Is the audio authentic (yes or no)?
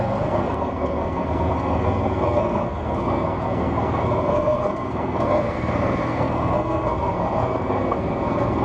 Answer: no